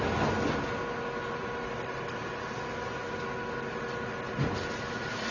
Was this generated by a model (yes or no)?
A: no